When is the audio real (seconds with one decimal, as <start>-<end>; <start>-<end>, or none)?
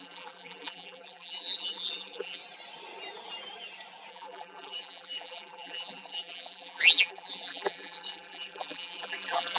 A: 2.4-4.1